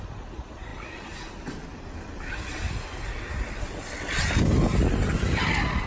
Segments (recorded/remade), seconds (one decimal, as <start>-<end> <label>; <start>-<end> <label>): 0.0-5.9 recorded